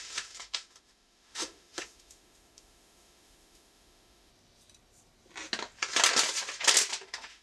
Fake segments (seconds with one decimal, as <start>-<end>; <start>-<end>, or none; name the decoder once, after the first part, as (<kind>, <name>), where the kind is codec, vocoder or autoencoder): 0.0-4.3 (autoencoder, DAC-VAE); 7.0-7.4